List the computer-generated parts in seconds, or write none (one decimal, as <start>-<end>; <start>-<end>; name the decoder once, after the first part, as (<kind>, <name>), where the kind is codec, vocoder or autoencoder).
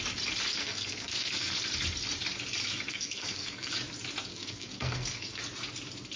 0.6-1.5 (codec, SNAC); 2.9-3.7; 4.3-5.4